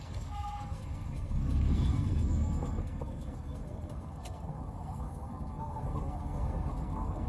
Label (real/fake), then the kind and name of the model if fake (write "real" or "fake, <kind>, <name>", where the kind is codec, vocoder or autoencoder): fake, codec, SNAC